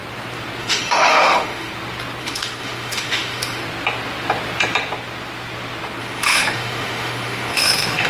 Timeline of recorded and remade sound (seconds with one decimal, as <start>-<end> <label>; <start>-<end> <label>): 0.0-0.6 recorded; 0.6-1.7 remade; 1.7-2.2 recorded; 2.2-3.6 remade; 3.6-6.0 recorded; 6.0-8.1 remade